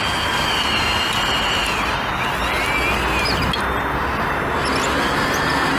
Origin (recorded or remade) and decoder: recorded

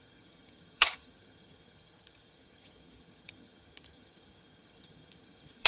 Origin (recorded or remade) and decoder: remade, vocoder, HiFi-GAN